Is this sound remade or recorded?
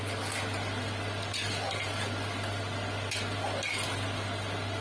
recorded